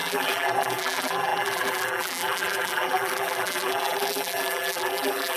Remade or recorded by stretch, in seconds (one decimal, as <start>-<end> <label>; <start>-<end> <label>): 0.0-5.4 remade